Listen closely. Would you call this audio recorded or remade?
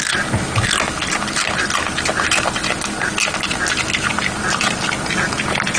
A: recorded